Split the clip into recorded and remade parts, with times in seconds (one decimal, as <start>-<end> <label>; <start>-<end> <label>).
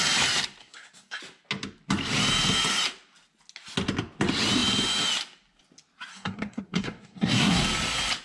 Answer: 0.0-0.6 recorded; 0.6-1.2 remade; 1.2-6.1 recorded; 6.1-7.6 remade; 7.6-8.2 recorded